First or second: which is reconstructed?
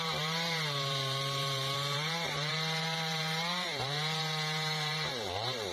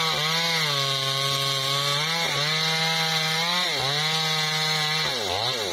first